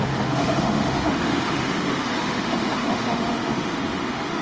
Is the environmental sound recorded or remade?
remade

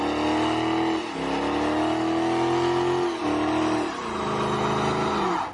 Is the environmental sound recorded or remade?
recorded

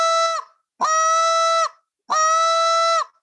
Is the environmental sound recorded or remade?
recorded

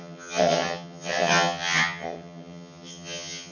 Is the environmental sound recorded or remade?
remade